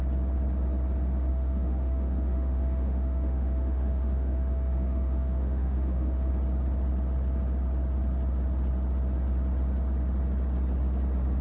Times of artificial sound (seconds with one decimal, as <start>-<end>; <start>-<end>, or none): 1.3-6.3